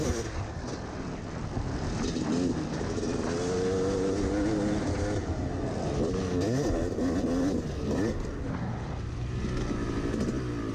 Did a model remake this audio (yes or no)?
no